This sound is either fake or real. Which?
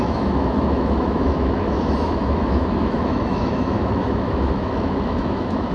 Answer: fake